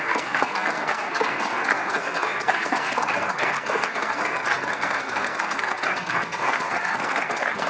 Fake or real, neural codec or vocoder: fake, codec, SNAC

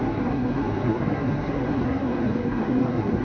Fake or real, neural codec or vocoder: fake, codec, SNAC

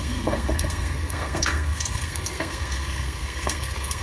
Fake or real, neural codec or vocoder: fake, codec, SNAC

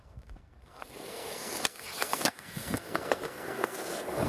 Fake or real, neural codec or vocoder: fake, codec, SNAC